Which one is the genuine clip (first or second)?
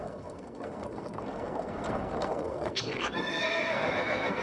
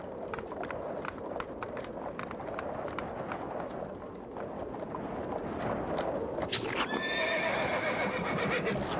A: second